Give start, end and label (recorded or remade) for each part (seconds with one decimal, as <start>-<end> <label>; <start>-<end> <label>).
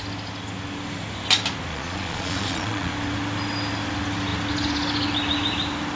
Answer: 0.0-1.7 recorded; 1.7-2.9 remade; 2.9-6.0 recorded